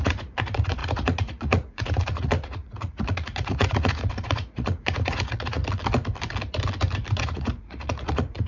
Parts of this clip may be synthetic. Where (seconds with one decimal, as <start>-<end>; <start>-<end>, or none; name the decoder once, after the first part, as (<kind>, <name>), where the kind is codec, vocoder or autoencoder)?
0.0-5.6 (vocoder, Vocos); 7.1-8.5